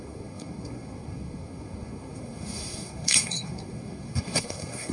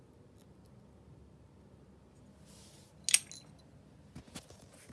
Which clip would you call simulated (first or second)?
first